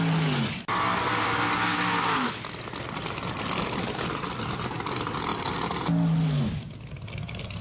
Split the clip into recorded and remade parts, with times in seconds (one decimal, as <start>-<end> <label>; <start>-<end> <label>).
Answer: 0.0-1.7 recorded; 1.7-2.3 remade; 2.3-7.6 recorded